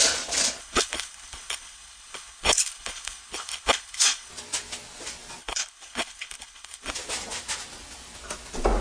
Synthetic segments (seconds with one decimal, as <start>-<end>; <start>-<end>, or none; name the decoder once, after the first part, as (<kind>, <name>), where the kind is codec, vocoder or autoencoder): 0.6-4.3 (codec, HILCodec); 5.4-6.9